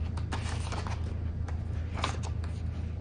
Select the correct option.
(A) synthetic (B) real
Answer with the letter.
B